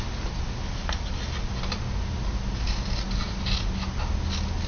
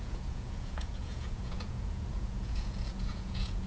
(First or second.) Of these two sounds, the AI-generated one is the second